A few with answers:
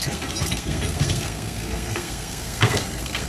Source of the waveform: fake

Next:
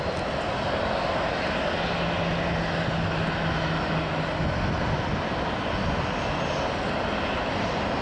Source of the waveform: real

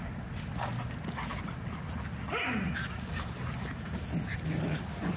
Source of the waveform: real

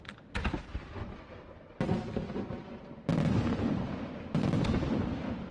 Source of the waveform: real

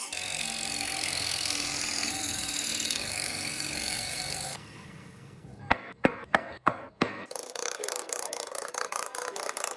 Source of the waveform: fake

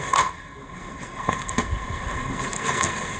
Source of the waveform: fake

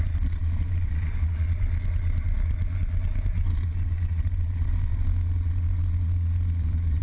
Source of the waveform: fake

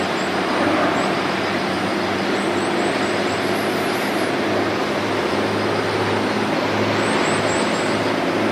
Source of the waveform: real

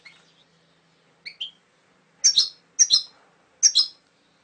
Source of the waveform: real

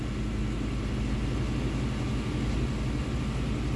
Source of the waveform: real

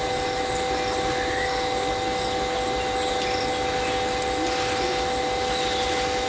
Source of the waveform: real